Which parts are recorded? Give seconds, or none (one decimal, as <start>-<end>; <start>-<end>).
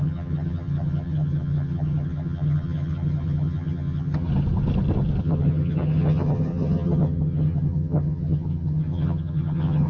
4.3-5.2